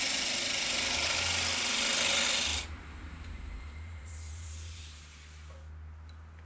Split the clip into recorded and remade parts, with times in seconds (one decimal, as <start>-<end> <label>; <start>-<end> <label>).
0.0-2.5 recorded; 2.5-4.8 remade; 4.8-6.5 recorded